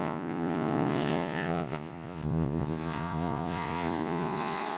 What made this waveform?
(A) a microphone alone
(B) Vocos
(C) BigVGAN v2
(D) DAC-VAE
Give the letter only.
B